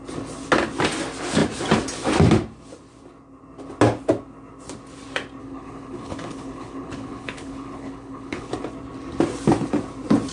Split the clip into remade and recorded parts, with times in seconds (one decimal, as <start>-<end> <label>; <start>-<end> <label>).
0.0-5.4 recorded; 5.4-8.5 remade; 8.5-10.3 recorded